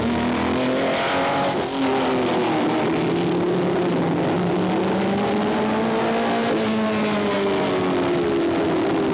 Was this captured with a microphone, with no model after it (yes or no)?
yes